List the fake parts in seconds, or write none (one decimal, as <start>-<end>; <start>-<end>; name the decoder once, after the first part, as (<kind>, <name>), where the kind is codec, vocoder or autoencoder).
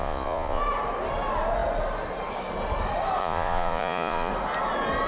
0.0-0.6 (vocoder, Vocos); 3.2-4.3